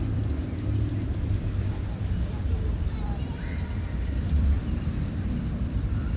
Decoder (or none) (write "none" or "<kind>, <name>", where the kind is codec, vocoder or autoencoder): vocoder, BigVGAN v2